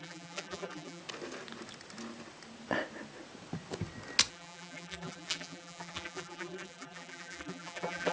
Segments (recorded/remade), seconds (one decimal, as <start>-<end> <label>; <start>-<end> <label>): 0.0-1.0 remade; 1.0-4.3 recorded; 4.3-8.1 remade